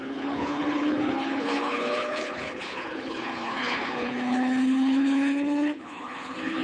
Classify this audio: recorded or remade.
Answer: remade